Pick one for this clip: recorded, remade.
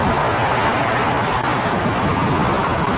recorded